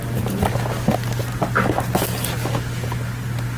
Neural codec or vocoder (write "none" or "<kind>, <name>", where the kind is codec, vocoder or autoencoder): none